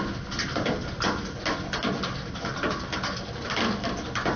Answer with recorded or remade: recorded